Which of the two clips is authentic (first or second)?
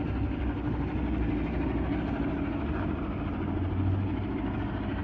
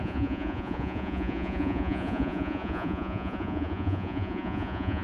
first